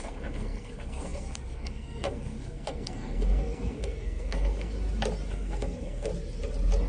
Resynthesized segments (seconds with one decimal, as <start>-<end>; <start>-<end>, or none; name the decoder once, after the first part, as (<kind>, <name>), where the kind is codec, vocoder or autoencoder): 0.0-4.7 (codec, SNAC); 5.3-6.1